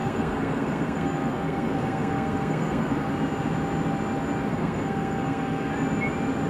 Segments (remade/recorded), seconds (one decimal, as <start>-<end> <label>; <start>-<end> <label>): 0.0-3.1 remade; 3.1-4.5 recorded; 4.5-5.7 remade; 5.7-6.5 recorded